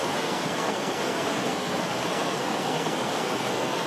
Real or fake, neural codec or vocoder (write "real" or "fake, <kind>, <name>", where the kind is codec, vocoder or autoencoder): fake, codec, SNAC